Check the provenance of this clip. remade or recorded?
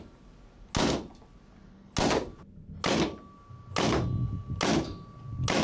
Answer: recorded